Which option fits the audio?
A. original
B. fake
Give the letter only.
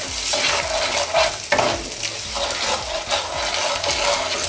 A